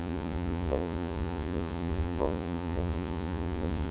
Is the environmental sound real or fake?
fake